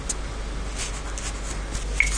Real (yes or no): yes